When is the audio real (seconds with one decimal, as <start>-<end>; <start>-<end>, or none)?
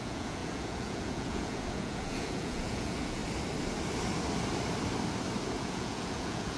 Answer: 3.2-5.6